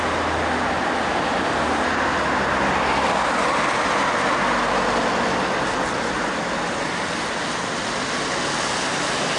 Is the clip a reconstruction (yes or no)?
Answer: no